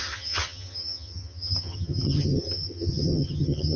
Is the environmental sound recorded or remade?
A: remade